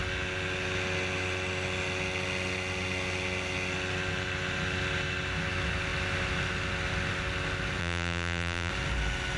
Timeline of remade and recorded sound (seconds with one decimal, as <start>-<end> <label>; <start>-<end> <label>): 0.0-7.8 recorded; 7.8-8.7 remade; 8.7-9.4 recorded